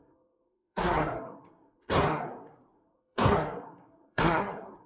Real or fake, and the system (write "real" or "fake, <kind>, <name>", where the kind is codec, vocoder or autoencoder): fake, codec, SNAC